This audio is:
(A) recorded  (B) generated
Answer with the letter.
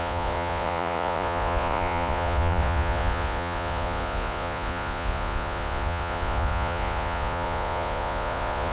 B